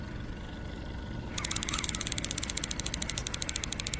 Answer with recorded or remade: recorded